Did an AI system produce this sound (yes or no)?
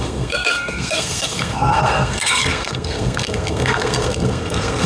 yes